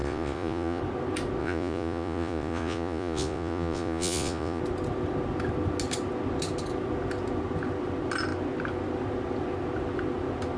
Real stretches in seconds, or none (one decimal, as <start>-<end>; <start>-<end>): 0.8-1.4; 4.6-10.6